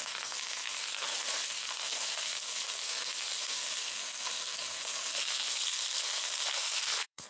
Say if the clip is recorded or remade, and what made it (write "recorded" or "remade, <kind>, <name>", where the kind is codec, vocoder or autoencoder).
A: remade, codec, SNAC